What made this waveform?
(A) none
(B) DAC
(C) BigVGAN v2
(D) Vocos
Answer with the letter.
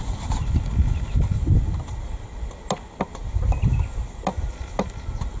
A